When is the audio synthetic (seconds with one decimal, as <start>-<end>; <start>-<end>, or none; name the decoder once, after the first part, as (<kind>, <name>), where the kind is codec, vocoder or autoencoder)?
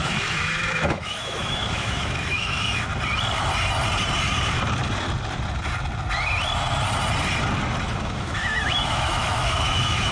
0.0-2.9 (autoencoder, DAC-VAE); 8.0-10.1